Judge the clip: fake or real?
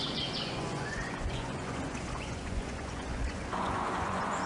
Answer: fake